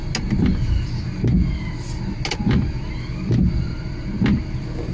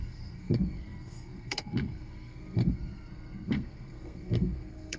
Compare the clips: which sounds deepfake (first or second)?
second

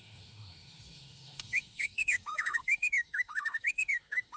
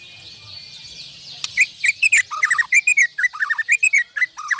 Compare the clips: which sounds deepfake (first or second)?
first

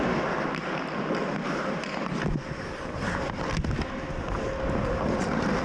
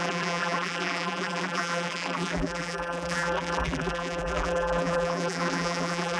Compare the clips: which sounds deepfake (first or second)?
second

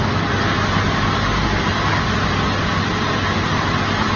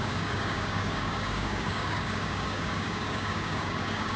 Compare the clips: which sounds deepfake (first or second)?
second